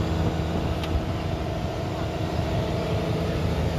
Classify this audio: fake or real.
real